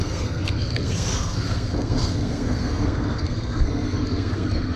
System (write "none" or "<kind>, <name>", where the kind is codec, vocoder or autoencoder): codec, SNAC